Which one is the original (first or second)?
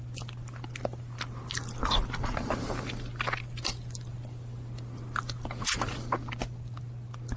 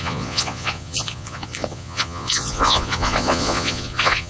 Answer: first